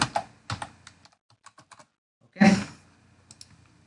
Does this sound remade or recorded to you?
recorded